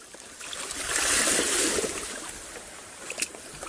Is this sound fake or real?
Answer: real